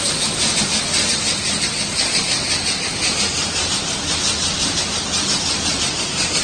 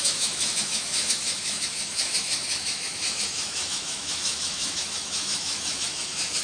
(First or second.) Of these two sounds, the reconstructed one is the second